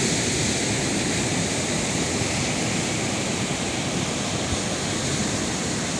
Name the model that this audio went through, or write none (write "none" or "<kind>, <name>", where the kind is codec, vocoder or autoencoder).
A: none